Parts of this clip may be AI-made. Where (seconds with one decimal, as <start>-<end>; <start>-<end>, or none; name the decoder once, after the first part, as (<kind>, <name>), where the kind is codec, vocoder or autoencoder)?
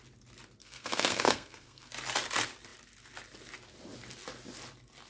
0.6-1.9 (codec, SNAC)